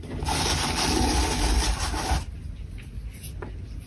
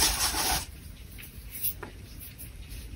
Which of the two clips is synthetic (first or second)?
second